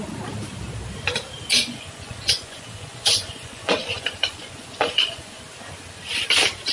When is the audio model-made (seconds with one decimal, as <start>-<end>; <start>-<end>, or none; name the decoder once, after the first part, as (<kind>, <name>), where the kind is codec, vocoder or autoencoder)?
1.5-5.4 (vocoder, Vocos)